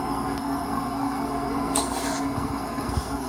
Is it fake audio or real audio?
fake